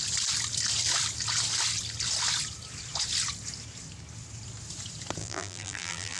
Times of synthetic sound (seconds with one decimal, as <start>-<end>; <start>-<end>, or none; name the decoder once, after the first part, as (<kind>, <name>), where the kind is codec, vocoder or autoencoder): 5.2-6.2 (vocoder, BigVGAN v2)